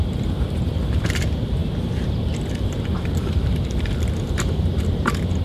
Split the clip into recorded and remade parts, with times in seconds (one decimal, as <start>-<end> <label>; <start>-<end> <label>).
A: 0.0-5.4 remade